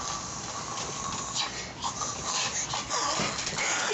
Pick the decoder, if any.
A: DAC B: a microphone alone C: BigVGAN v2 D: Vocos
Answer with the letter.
B